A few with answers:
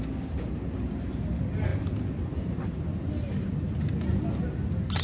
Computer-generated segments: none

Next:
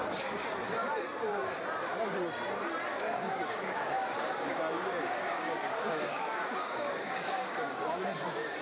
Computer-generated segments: 2.9-8.0 (codec, DAC)